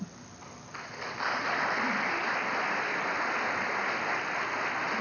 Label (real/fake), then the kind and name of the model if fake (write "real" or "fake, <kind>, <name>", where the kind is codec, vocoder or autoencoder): real